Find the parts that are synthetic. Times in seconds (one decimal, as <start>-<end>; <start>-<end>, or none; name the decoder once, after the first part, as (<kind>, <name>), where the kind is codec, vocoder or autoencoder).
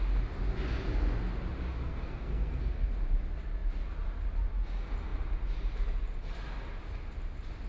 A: 1.7-2.9 (codec, SNAC)